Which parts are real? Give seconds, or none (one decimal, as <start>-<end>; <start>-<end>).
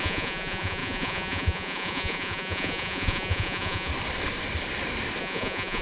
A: 3.9-5.2